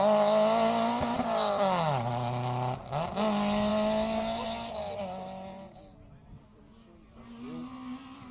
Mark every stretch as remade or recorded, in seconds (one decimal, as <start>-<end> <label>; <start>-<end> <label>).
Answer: 0.0-8.3 recorded